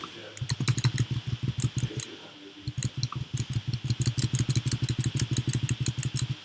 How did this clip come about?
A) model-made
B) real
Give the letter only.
B